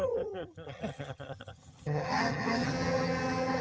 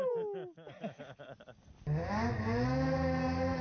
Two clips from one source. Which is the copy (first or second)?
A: first